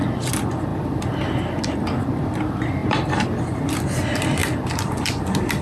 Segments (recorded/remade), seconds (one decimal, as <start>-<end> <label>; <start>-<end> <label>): 0.0-0.7 recorded; 0.7-1.6 remade; 1.6-4.4 recorded; 4.4-5.6 remade